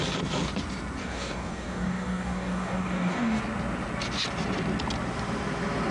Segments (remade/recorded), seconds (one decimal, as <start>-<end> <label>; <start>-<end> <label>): 0.0-1.0 recorded; 1.0-3.4 remade; 3.4-5.9 recorded